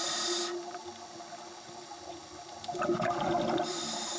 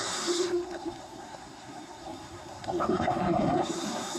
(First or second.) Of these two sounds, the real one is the first